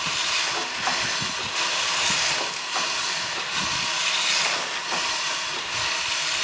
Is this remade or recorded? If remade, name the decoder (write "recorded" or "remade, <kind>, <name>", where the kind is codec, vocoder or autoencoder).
recorded